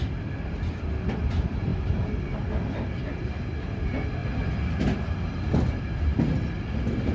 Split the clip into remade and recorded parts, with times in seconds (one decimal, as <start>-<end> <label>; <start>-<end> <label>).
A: 0.0-7.1 recorded